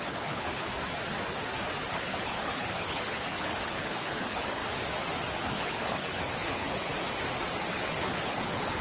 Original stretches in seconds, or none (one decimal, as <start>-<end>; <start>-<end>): 0.7-1.9; 4.6-5.4; 6.9-7.7